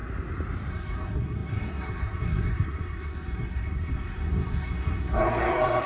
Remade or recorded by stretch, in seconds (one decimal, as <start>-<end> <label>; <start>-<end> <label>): 0.0-0.7 recorded; 0.7-5.9 remade